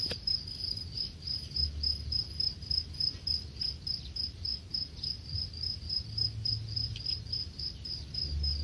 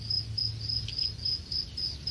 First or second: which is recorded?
second